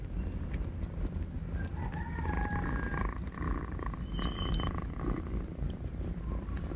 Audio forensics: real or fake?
real